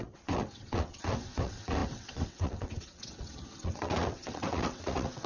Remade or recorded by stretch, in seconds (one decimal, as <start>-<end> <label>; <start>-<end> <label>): 0.0-5.3 remade